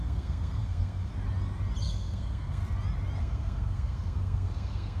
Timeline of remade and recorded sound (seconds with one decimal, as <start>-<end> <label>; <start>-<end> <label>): 0.0-1.1 remade; 1.1-1.8 recorded; 1.8-2.6 remade; 2.6-3.2 recorded; 3.2-5.0 remade